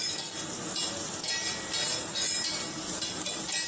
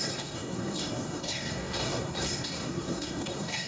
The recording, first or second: first